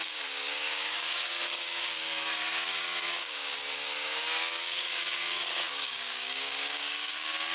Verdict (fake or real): fake